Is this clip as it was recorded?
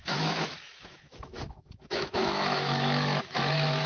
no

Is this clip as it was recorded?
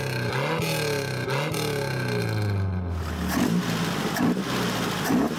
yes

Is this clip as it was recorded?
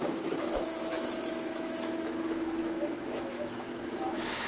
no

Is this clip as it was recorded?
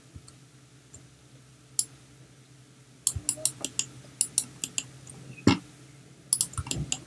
yes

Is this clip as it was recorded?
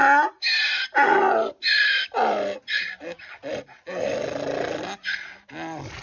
yes